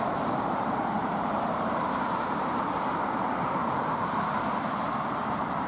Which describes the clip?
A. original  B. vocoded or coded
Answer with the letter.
B